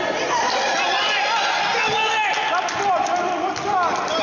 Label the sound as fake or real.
real